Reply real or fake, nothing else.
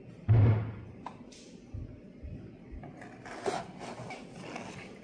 real